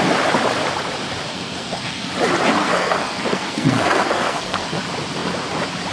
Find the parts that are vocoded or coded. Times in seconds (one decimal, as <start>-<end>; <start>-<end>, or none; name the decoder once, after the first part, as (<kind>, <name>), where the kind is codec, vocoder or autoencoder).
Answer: 1.3-2.1 (codec, SNAC); 2.6-4.8